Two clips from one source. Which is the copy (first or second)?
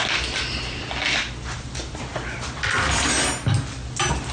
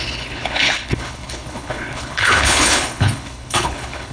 second